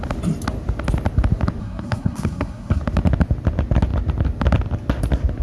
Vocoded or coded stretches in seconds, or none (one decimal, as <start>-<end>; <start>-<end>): 1.6-2.8